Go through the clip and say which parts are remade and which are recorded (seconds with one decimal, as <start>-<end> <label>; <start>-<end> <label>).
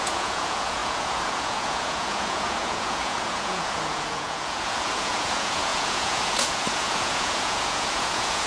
0.0-8.5 remade